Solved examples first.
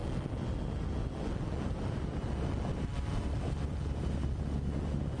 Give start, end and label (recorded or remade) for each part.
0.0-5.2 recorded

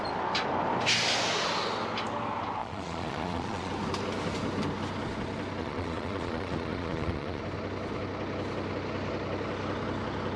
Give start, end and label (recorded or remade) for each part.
0.0-2.6 recorded; 2.6-3.7 remade; 3.7-5.6 recorded; 5.6-7.4 remade; 7.4-10.4 recorded

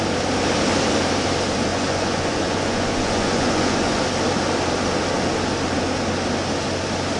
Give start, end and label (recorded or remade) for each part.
0.0-1.7 recorded; 1.7-4.0 remade; 4.0-7.2 recorded

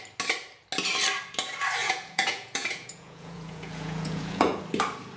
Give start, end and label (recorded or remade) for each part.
0.0-1.8 recorded; 1.8-4.6 remade; 4.6-5.2 recorded

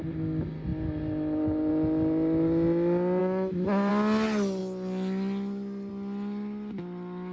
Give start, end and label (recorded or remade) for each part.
0.0-3.2 recorded; 3.2-3.9 remade; 3.9-7.3 recorded

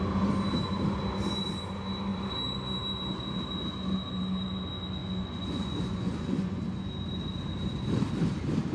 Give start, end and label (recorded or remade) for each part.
0.0-5.0 recorded; 5.0-6.6 remade; 6.6-8.7 recorded

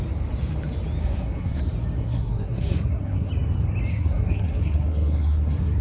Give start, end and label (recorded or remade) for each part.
0.0-1.0 recorded; 1.0-1.6 remade; 1.6-2.0 recorded; 2.0-3.3 remade; 3.3-3.9 recorded; 3.9-5.8 remade